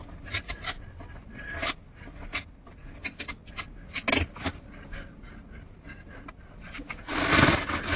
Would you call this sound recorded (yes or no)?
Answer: yes